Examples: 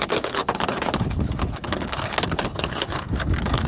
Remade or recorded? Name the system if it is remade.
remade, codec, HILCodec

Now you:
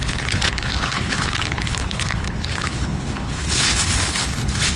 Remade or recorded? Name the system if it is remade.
remade, codec, HILCodec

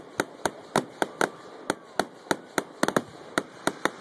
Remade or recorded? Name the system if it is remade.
recorded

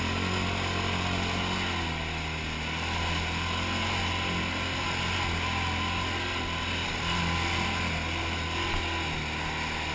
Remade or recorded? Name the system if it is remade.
recorded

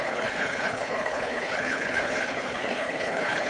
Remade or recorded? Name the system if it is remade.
remade, codec, HILCodec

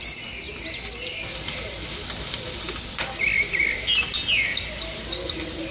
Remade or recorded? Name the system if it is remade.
recorded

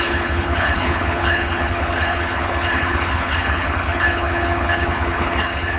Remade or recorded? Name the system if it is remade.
remade, codec, HILCodec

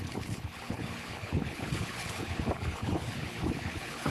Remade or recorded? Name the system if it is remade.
remade, codec, HILCodec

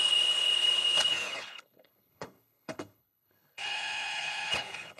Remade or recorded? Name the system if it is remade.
remade, codec, HILCodec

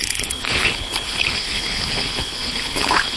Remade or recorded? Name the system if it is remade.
remade, codec, HILCodec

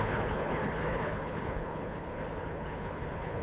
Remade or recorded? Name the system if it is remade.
remade, codec, HILCodec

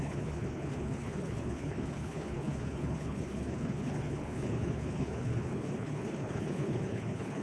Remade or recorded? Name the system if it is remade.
remade, codec, HILCodec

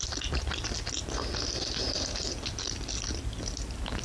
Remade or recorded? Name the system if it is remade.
recorded